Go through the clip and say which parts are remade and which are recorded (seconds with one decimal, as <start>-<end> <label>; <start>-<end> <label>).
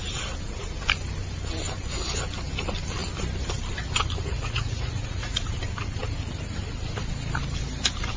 0.0-4.3 recorded; 4.3-5.4 remade; 5.4-8.2 recorded